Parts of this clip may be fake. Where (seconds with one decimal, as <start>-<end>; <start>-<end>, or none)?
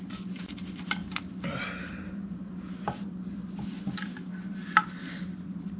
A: none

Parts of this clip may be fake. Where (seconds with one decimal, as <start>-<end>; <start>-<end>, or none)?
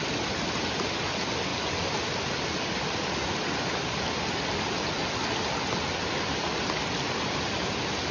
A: none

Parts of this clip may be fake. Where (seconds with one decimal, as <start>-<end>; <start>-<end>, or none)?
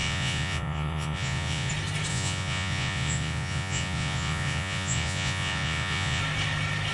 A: 0.0-1.7; 2.1-6.2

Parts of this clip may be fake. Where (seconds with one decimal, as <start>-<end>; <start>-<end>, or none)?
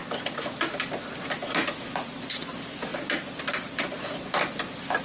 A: none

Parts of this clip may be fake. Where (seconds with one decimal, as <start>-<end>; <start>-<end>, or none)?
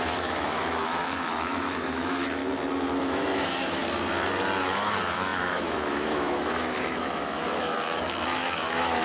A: 0.0-2.4; 3.0-3.8; 4.6-9.0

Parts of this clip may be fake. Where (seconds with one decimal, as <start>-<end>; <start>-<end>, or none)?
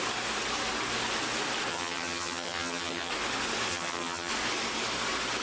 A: 1.7-3.1; 3.7-4.3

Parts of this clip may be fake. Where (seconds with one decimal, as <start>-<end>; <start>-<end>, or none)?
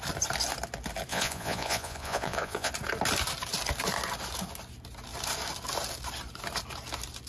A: 1.1-2.7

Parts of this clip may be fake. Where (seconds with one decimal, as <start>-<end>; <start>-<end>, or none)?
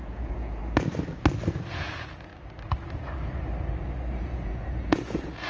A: 0.0-0.6; 1.5-2.3; 4.2-5.5